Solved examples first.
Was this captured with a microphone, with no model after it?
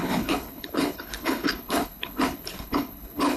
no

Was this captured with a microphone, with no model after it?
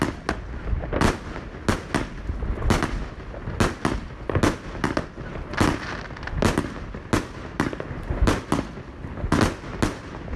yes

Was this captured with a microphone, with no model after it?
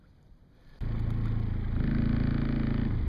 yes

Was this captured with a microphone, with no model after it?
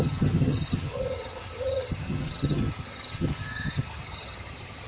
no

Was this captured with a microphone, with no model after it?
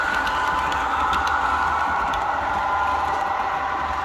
yes